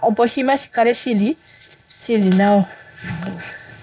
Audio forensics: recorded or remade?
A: remade